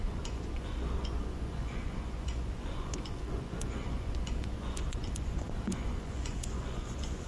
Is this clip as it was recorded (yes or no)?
no